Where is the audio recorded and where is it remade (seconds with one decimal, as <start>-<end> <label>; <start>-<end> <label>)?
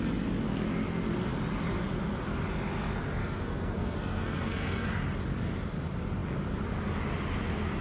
0.0-3.2 recorded; 3.2-4.9 remade; 4.9-7.8 recorded